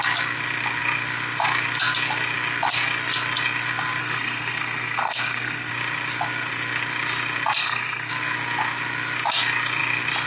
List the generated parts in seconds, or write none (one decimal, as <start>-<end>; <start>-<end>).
4.0-5.7; 7.6-8.1